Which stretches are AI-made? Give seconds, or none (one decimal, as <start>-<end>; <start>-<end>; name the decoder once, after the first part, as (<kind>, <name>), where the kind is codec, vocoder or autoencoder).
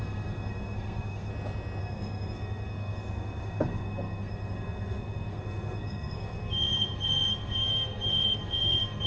0.0-1.3 (codec, SNAC); 1.8-9.1